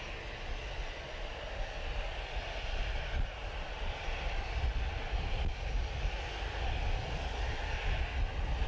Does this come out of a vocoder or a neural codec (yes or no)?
no